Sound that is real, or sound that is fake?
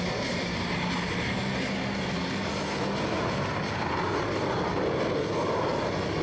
real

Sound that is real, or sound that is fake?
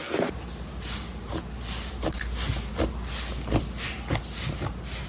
real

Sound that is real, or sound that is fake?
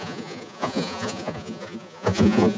fake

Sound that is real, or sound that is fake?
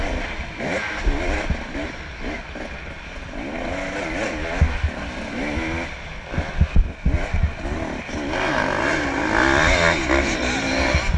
real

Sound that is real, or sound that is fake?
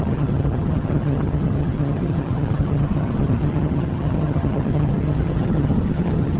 fake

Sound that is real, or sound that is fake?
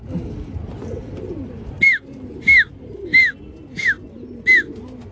real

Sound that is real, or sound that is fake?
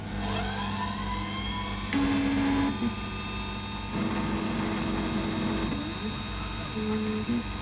real